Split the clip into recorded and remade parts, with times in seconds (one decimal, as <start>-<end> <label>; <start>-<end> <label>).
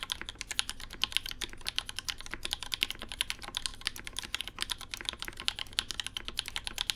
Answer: 0.0-7.0 recorded